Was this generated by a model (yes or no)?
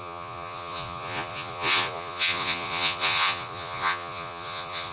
yes